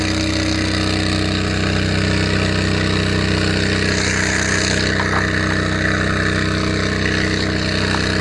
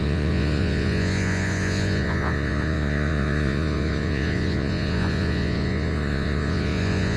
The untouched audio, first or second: first